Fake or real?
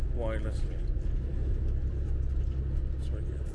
real